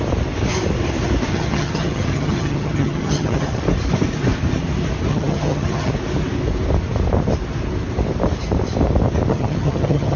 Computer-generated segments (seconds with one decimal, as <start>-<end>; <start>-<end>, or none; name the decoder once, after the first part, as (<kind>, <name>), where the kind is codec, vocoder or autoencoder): 1.3-3.6 (vocoder, HiFi-GAN); 5.1-5.9; 9.3-10.2